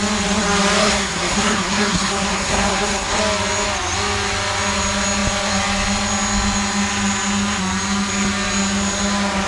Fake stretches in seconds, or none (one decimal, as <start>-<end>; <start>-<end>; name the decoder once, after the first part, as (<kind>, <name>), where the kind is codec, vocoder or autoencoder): 0.8-3.2 (codec, SNAC)